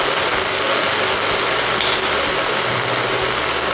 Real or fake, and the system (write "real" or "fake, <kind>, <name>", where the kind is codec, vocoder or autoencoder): real